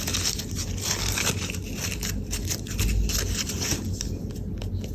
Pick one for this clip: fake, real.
real